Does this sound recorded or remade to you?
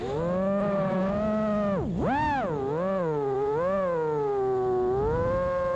recorded